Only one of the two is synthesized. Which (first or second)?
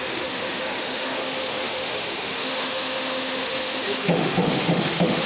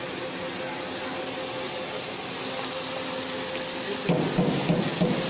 first